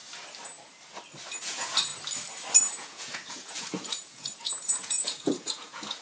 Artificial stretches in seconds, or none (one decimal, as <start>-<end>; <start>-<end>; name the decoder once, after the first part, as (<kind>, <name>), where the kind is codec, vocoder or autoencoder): 1.3-1.9 (vocoder, Vocos); 2.8-6.0